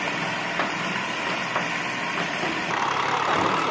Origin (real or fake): fake